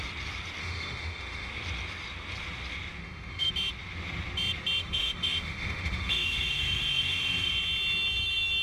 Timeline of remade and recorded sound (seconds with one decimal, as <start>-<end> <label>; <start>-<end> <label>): 0.0-0.6 recorded; 0.6-1.5 remade; 1.5-3.0 recorded; 3.0-3.5 remade; 3.5-4.8 recorded; 4.8-7.5 remade; 7.5-8.6 recorded

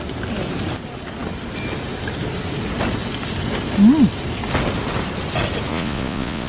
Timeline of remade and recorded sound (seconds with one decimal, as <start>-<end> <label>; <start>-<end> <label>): 0.0-5.7 recorded; 5.7-6.5 remade